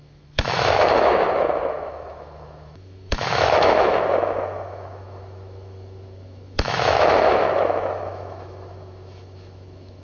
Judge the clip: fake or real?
fake